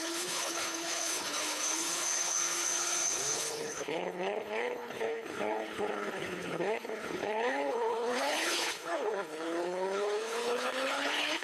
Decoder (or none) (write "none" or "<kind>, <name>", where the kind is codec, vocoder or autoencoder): codec, HILCodec